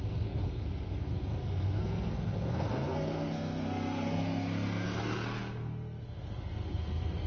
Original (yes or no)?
no